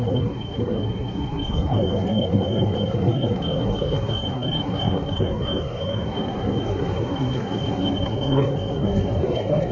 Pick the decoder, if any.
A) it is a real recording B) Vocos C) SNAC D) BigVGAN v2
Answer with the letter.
C